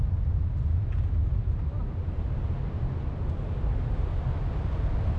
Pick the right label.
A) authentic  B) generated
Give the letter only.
A